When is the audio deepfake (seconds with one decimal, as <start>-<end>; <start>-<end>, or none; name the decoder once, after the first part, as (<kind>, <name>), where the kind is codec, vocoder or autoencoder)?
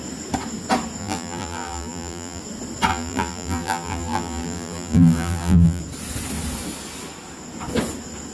1.0-2.4 (vocoder, BigVGAN v2); 2.9-5.8